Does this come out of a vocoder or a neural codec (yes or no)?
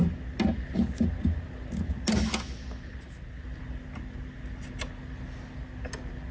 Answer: no